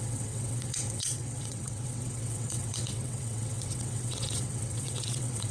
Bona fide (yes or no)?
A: no